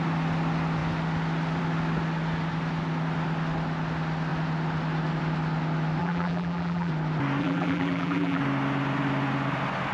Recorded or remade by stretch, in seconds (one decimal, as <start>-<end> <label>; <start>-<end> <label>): 0.0-6.0 recorded; 6.0-6.9 remade; 6.9-7.4 recorded; 7.4-8.4 remade; 8.4-9.9 recorded